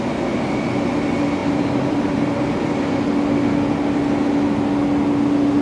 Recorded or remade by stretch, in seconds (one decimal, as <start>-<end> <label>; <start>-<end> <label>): 0.0-1.4 recorded; 1.4-2.4 remade; 2.4-5.6 recorded